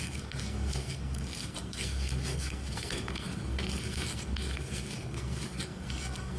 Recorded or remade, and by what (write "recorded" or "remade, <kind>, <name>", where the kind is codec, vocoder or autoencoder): remade, codec, SNAC